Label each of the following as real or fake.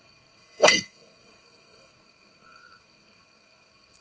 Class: fake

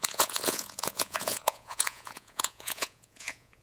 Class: fake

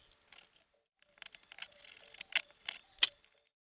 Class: real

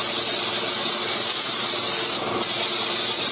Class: real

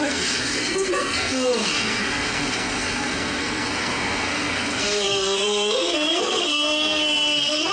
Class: fake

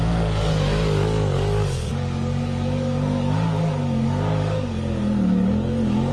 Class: fake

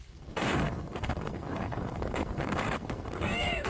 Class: fake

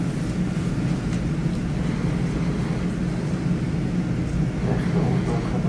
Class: real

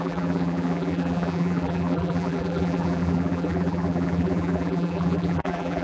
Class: fake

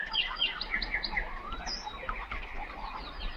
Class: real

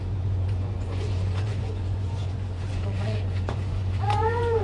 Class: fake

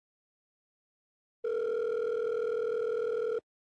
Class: real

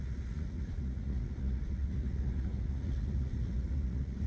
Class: fake